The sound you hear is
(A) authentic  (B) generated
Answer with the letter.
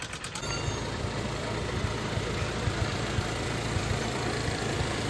B